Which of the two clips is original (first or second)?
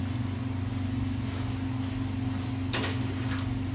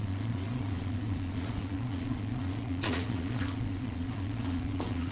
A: first